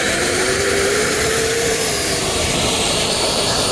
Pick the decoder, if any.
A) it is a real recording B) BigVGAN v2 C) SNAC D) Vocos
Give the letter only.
B